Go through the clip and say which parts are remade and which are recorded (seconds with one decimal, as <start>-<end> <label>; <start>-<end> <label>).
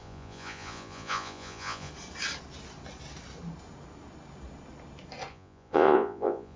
0.0-1.9 remade; 1.9-5.3 recorded; 5.3-6.6 remade